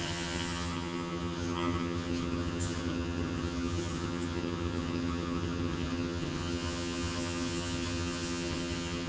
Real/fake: fake